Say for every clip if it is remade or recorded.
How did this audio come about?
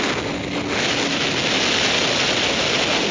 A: recorded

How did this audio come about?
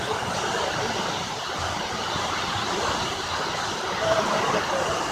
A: recorded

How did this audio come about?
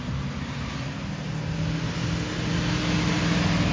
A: recorded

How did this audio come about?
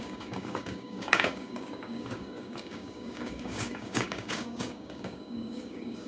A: remade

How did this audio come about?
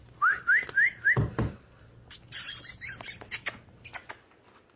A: recorded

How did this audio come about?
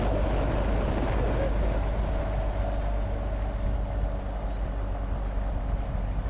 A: recorded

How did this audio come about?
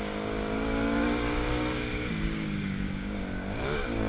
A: remade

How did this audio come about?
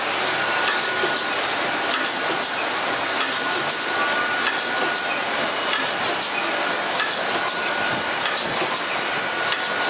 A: recorded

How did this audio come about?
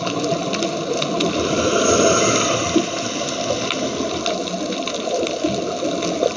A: recorded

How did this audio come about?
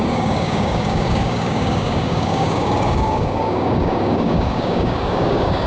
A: remade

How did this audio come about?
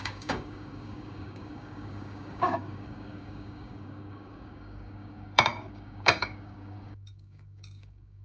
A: remade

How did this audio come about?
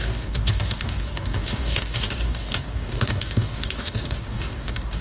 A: remade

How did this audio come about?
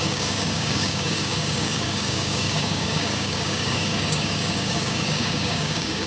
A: remade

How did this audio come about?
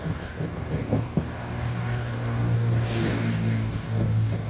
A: remade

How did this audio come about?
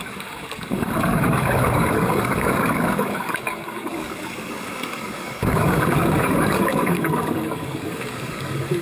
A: remade